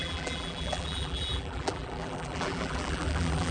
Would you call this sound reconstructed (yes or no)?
yes